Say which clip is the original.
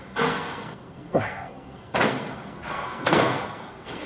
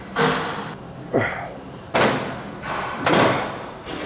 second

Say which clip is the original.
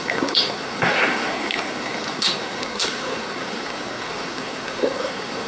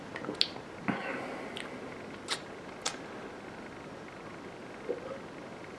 second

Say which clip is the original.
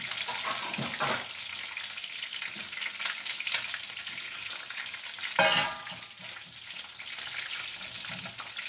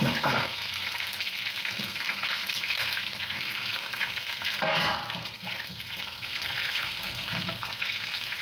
first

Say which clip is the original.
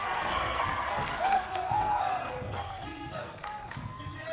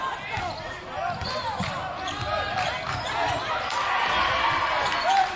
second